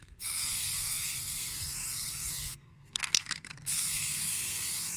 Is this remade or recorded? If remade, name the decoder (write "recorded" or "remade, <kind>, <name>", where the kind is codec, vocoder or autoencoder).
remade, codec, SNAC